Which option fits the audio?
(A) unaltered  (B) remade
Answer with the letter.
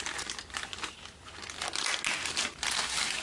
A